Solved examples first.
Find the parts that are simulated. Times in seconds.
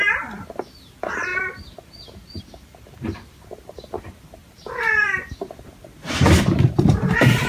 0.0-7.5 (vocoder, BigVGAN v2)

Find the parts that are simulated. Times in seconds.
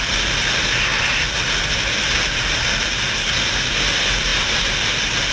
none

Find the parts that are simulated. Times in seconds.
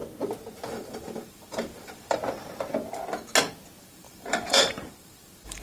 0.7-2.2 (vocoder, BigVGAN v2); 3.8-5.6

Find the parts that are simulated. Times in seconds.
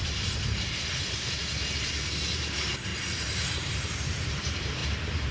0.0-1.4 (vocoder, BigVGAN v2); 2.2-2.9; 3.5-5.3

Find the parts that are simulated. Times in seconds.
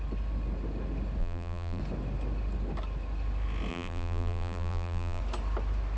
1.2-1.8 (vocoder, BigVGAN v2); 3.7-5.2